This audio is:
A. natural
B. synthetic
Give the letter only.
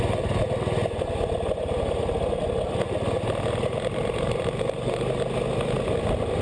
A